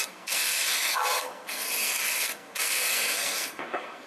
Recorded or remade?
remade